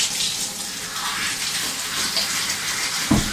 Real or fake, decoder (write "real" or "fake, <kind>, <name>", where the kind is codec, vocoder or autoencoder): real